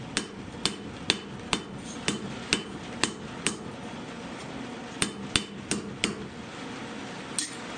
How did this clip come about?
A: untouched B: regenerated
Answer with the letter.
A